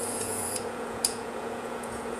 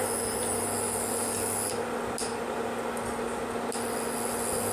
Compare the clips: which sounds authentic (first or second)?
second